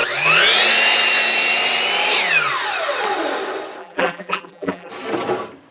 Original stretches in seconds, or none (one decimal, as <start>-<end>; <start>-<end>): 0.0-3.8; 4.9-5.7